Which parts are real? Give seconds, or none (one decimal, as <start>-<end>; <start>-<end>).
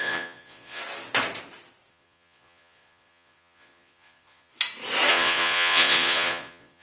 0.8-1.9; 4.5-5.1